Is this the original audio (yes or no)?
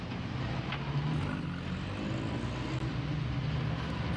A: yes